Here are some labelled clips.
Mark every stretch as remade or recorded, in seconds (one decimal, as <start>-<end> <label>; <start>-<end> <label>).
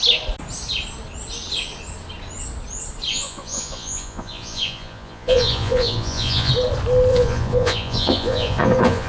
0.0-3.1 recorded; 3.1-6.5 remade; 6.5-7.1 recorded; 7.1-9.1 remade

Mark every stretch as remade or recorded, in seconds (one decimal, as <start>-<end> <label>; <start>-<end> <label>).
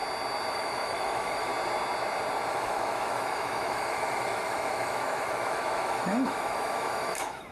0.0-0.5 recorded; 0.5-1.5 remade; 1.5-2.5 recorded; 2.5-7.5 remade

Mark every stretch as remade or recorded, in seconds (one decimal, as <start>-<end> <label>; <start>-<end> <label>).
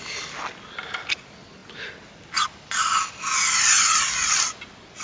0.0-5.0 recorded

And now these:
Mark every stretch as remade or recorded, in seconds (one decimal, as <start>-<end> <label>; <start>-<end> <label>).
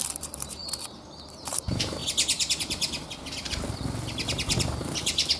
0.0-0.6 remade; 0.6-1.3 recorded; 1.3-2.0 remade; 2.0-4.6 recorded; 4.6-5.4 remade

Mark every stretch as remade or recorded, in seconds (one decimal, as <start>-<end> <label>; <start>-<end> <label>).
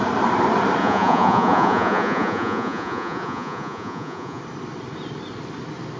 0.0-0.8 recorded; 0.8-4.4 remade; 4.4-6.0 recorded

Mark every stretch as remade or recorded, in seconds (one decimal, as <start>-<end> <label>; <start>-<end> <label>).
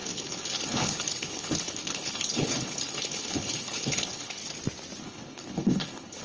0.0-4.4 remade; 4.4-5.0 recorded; 5.0-6.2 remade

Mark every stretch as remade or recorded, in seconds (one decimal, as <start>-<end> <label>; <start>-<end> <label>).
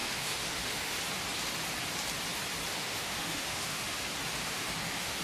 0.0-1.0 remade; 1.0-2.7 recorded; 2.7-4.0 remade; 4.0-4.4 recorded; 4.4-5.2 remade